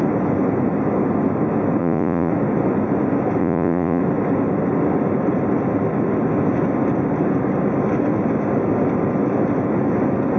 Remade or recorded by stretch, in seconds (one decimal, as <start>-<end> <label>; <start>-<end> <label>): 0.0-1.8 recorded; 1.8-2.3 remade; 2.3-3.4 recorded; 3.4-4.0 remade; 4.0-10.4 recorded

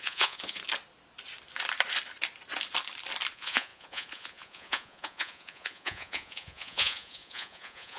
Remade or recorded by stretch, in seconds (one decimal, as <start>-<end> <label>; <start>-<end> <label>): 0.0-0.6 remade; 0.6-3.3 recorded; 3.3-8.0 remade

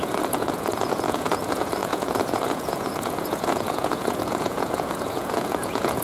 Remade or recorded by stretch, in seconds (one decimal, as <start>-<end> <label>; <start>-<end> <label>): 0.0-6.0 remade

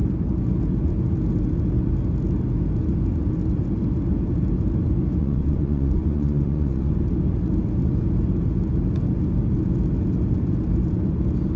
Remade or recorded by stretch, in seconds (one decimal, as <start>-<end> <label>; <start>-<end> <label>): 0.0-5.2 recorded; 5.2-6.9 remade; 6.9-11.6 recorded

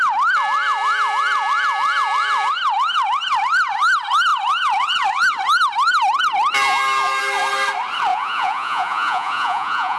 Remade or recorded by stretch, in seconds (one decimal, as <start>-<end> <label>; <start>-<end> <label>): 0.0-8.1 recorded; 8.1-10.0 remade